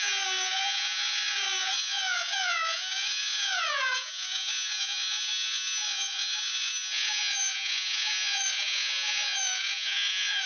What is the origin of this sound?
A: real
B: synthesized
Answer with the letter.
B